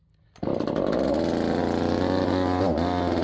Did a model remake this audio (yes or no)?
no